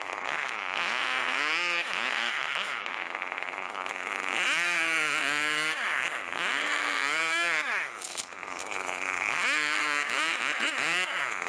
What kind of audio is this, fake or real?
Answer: fake